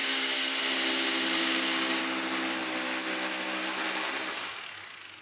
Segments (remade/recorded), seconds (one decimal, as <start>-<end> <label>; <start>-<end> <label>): 0.0-0.6 remade; 0.6-1.4 recorded; 1.4-2.0 remade; 2.0-5.2 recorded